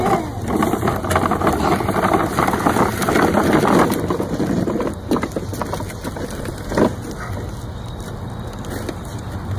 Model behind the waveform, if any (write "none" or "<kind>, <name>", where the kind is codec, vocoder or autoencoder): vocoder, BigVGAN v2